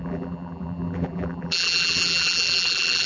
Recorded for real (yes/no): no